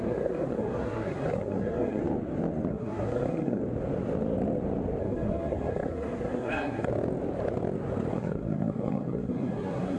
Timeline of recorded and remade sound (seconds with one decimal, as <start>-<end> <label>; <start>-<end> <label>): 0.0-2.0 remade; 2.0-2.7 recorded; 2.7-3.6 remade; 3.6-5.0 recorded; 5.0-6.9 remade; 6.9-8.1 recorded; 8.1-10.0 remade